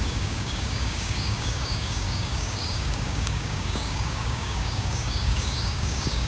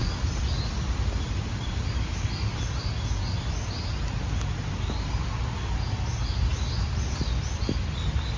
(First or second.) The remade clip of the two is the first